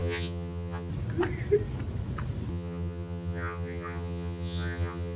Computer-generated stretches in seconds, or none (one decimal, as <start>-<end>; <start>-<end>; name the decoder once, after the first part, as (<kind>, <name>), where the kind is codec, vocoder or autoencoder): 0.0-0.9 (vocoder, HiFi-GAN); 2.5-5.2